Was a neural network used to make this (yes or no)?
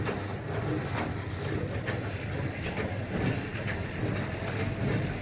no